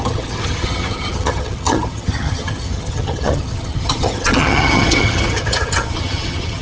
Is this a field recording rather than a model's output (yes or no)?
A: no